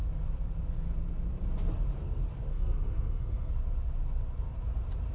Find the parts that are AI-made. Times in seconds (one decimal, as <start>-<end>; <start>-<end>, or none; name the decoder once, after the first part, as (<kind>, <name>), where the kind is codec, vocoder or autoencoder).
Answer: 2.5-3.5 (codec, SNAC)